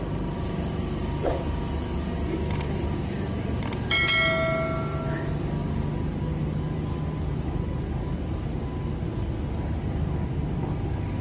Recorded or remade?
recorded